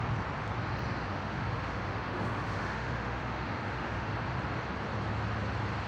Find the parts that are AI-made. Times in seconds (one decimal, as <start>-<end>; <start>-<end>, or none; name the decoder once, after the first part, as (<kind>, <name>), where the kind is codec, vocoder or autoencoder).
1.1-4.1 (autoencoder, DAC-VAE)